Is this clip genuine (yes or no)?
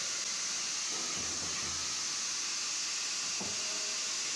yes